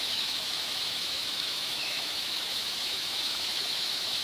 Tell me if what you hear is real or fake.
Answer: fake